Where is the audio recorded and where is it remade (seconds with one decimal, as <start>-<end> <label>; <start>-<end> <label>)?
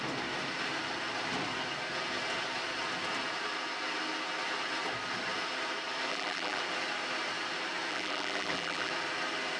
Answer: 0.0-6.1 recorded; 6.1-6.6 remade; 6.6-7.9 recorded; 7.9-8.9 remade; 8.9-9.6 recorded